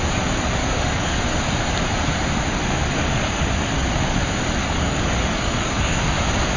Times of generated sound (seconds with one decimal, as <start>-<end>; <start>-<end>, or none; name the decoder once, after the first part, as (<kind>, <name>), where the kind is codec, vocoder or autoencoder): 0.6-1.2 (codec, DAC); 3.0-3.5; 4.6-6.0

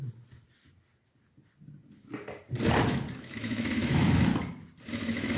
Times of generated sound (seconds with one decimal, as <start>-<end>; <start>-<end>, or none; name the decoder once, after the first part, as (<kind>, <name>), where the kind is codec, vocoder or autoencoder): 3.2-4.3 (autoencoder, DAC-VAE); 4.9-5.4